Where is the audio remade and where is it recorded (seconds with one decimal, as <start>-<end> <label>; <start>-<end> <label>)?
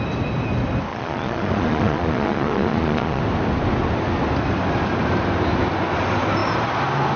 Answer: 0.0-0.9 recorded; 0.9-3.2 remade; 3.2-7.2 recorded